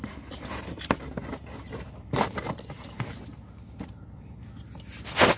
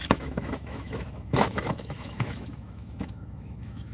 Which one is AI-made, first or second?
second